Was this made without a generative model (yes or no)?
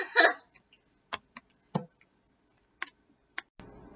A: yes